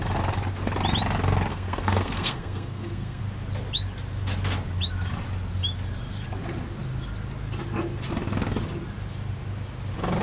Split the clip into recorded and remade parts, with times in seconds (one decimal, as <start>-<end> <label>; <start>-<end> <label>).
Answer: 0.0-1.5 recorded; 1.5-3.2 remade; 3.2-10.2 recorded